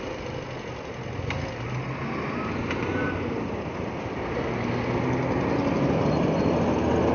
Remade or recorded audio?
recorded